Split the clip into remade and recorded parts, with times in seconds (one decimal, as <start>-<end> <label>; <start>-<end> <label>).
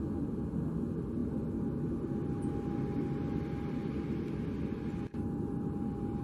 0.0-6.2 recorded